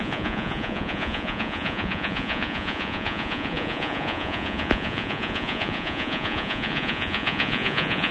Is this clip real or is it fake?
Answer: fake